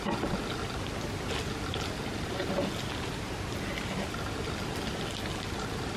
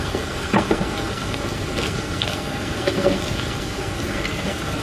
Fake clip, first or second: second